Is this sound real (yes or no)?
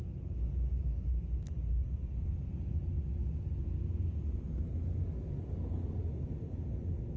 yes